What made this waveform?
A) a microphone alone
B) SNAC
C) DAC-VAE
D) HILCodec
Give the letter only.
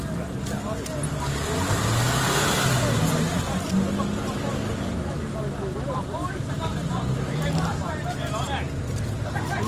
A